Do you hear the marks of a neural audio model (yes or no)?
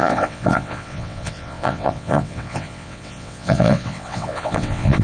yes